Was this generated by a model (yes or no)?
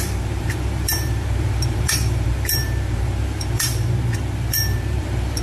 yes